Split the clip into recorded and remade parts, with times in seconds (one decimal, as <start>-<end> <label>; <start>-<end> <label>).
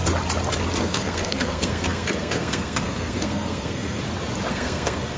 0.0-0.8 recorded; 0.8-4.0 remade; 4.0-4.5 recorded; 4.5-5.2 remade